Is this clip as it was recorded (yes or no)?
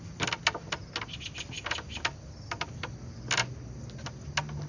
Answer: yes